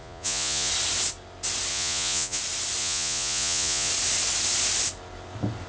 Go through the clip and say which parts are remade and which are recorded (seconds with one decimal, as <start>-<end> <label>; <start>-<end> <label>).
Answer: 0.0-0.7 remade; 0.7-1.7 recorded; 1.7-2.4 remade; 2.4-2.8 recorded; 2.8-3.9 remade; 3.9-5.7 recorded